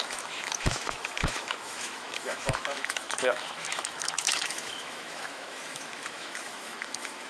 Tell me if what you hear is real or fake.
fake